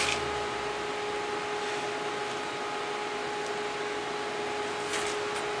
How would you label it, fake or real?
real